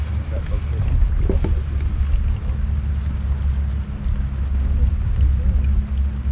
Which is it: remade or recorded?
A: recorded